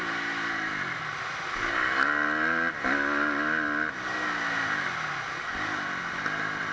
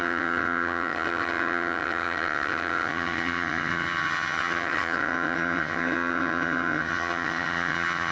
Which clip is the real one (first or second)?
first